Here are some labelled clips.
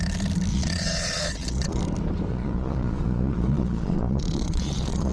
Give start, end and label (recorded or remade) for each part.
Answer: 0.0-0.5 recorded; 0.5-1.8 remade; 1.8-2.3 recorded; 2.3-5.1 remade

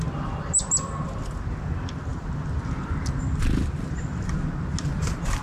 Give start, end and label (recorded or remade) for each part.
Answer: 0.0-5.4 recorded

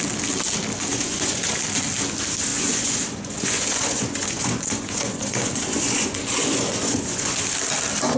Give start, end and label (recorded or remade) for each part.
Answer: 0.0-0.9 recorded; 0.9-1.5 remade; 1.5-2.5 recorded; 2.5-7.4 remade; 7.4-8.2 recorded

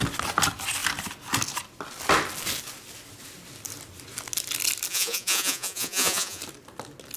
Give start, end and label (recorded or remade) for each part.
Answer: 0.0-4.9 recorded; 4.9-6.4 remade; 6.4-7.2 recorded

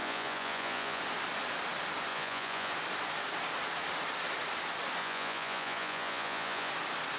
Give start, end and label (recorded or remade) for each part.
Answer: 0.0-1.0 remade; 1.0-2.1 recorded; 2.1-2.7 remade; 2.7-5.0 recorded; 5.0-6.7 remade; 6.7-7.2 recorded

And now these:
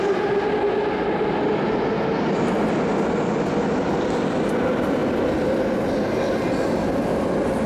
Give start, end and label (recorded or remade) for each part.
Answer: 0.0-7.7 recorded

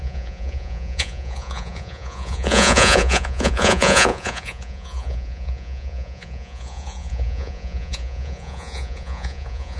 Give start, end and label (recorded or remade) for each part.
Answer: 0.0-9.8 remade